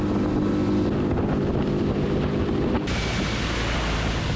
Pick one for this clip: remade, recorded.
recorded